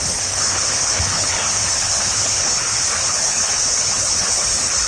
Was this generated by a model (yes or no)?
yes